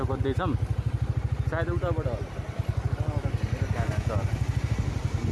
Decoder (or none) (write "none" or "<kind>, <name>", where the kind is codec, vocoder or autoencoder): none